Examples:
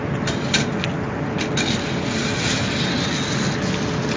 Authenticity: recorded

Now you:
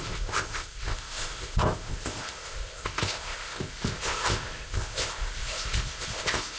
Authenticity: remade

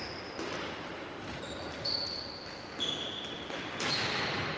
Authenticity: recorded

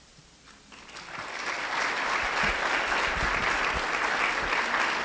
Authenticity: recorded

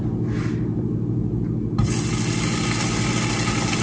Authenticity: recorded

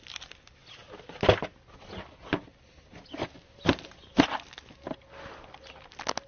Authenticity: recorded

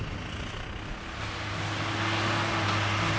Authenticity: recorded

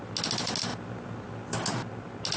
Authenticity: recorded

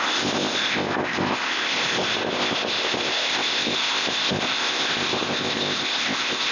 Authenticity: remade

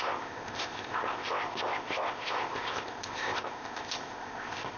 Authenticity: remade